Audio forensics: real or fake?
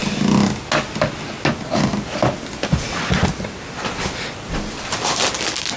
real